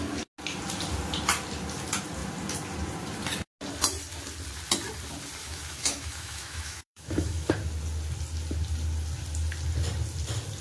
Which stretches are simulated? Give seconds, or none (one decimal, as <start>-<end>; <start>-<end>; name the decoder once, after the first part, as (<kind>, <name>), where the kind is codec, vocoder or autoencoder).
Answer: 5.4-7.5 (autoencoder, DAC-VAE)

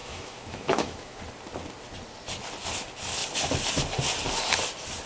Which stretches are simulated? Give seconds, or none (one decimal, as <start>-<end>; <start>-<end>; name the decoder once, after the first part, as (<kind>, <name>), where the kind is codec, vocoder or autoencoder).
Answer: 0.0-1.2 (autoencoder, DAC-VAE)

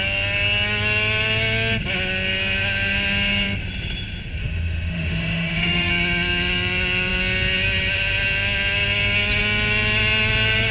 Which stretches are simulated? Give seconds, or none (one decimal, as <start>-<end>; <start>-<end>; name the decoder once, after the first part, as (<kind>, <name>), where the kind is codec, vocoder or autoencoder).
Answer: 4.4-5.9 (autoencoder, DAC-VAE)

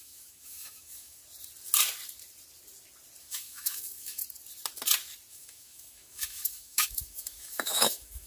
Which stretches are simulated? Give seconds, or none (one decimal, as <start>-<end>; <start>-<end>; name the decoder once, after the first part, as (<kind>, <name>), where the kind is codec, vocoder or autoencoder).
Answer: 0.0-1.2 (autoencoder, DAC-VAE); 3.2-4.2; 5.3-8.3